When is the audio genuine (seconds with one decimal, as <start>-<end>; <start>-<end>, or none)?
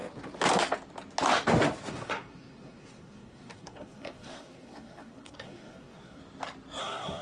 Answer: 0.0-1.9; 6.2-6.8